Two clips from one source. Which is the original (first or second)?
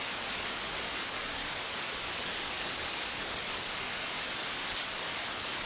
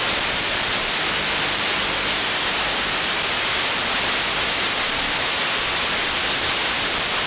second